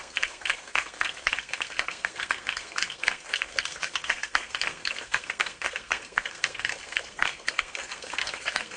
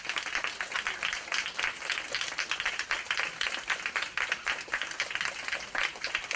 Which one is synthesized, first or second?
first